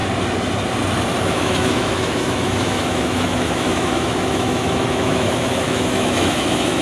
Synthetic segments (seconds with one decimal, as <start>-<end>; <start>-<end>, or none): 1.2-6.8